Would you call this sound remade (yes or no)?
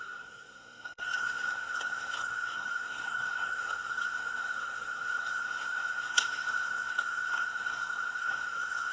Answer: yes